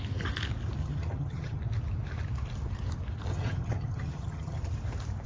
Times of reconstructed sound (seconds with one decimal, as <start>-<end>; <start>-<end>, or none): 0.8-1.6; 3.3-4.6